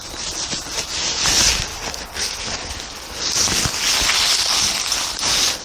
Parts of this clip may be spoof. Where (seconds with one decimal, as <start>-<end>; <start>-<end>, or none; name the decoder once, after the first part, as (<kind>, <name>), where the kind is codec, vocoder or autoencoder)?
none